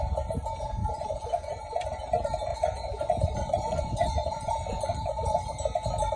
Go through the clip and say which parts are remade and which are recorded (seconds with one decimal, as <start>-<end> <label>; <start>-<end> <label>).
0.0-0.8 recorded; 0.8-2.0 remade; 2.0-2.5 recorded; 2.5-5.5 remade; 5.5-6.2 recorded